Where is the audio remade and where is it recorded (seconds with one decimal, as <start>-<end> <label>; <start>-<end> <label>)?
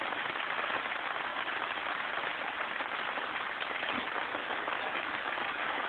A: 0.0-4.4 recorded; 4.4-5.9 remade